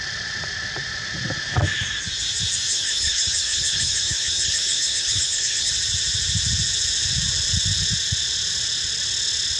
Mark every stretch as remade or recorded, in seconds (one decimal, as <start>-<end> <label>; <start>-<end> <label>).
0.0-2.7 recorded; 2.7-5.7 remade; 5.7-9.6 recorded